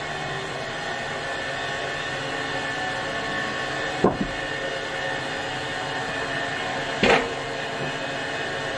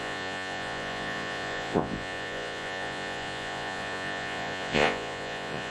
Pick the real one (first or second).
first